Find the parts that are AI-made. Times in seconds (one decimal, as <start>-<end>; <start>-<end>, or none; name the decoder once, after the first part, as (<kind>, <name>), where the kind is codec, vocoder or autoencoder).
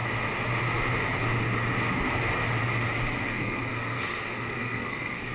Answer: 3.2-5.3 (codec, SNAC)